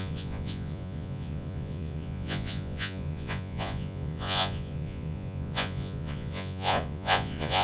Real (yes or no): no